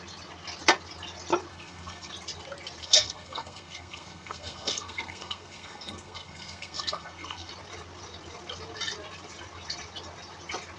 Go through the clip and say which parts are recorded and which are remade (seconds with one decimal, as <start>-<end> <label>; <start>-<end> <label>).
0.0-1.5 recorded; 1.5-2.1 remade; 2.1-2.8 recorded; 2.8-7.5 remade; 7.5-10.8 recorded